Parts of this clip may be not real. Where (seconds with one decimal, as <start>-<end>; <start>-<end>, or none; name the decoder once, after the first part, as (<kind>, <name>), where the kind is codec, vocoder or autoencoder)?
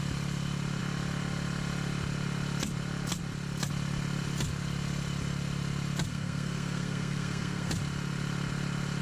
6.1-7.7 (codec, SNAC)